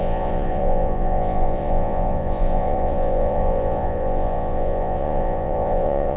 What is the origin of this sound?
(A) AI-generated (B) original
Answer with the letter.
A